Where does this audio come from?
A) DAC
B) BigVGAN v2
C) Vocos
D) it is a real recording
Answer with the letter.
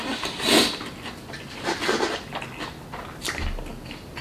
D